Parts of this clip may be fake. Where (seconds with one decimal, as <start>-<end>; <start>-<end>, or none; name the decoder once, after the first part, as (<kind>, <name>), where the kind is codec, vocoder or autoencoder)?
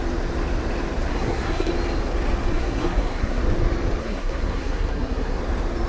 1.1-1.7 (codec, SNAC); 2.5-3.4; 4.0-5.4